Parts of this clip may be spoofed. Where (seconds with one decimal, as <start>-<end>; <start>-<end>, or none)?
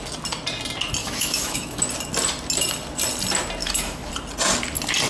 1.0-1.8; 3.6-4.1